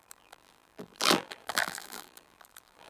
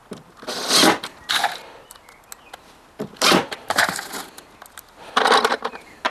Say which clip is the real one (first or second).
second